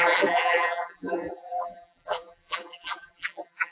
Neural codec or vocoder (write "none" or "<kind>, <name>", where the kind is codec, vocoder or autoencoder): vocoder, BigVGAN v2